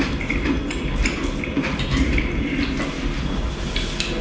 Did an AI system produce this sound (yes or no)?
no